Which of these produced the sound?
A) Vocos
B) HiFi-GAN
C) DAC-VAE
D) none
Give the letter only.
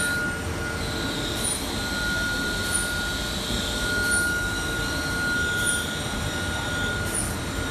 D